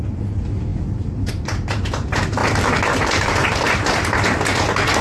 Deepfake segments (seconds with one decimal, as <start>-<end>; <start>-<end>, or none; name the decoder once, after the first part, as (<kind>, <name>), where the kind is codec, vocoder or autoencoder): 2.4-3.8 (vocoder, BigVGAN v2)